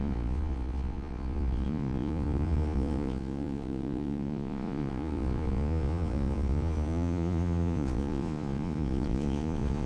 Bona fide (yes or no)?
no